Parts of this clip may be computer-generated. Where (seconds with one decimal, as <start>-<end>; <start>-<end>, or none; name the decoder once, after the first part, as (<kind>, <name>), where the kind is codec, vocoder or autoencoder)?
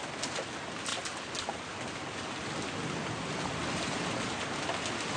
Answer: none